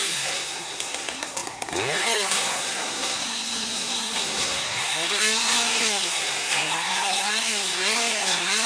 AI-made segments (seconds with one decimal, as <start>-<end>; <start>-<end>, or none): 0.0-8.7